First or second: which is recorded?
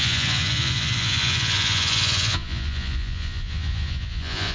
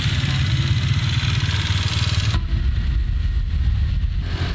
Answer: second